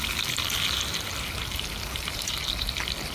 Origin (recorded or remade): recorded